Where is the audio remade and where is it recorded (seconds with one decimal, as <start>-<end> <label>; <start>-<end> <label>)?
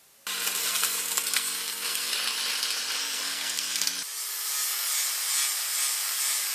0.0-0.6 recorded; 0.6-2.1 remade; 2.1-3.0 recorded; 3.0-3.9 remade; 3.9-6.5 recorded